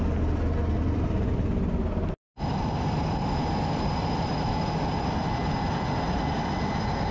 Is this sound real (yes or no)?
yes